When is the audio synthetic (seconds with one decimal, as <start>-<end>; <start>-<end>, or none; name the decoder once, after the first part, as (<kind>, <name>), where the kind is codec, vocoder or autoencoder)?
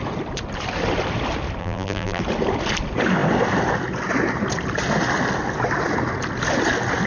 1.6-2.2 (vocoder, BigVGAN v2)